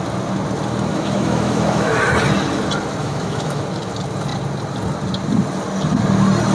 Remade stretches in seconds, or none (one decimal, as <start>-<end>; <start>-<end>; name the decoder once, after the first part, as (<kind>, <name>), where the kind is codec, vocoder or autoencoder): 0.9-2.0 (autoencoder, DAC-VAE); 3.0-3.6